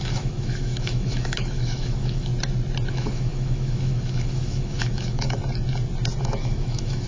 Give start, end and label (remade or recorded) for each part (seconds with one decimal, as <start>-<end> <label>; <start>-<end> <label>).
0.0-2.3 remade; 2.3-2.9 recorded; 2.9-5.4 remade; 5.4-6.2 recorded; 6.2-7.1 remade